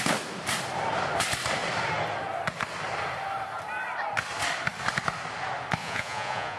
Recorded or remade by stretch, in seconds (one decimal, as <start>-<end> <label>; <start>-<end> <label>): 0.0-5.8 recorded; 5.8-6.6 remade